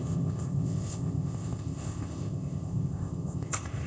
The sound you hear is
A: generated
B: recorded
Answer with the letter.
A